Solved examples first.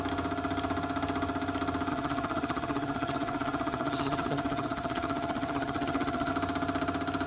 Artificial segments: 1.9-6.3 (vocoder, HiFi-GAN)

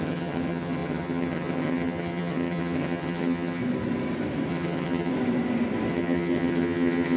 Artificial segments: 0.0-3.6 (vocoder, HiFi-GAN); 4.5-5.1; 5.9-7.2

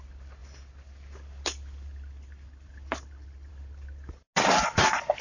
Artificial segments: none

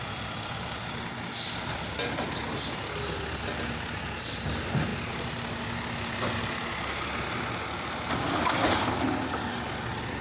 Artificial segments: none

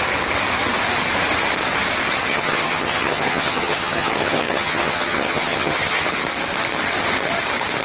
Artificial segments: 2.3-6.0 (vocoder, HiFi-GAN)

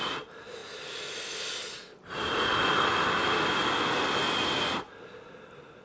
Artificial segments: none